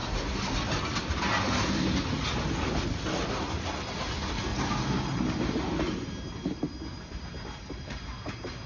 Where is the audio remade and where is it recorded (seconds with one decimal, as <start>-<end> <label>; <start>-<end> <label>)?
0.0-8.7 recorded